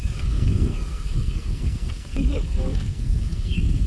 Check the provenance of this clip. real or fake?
fake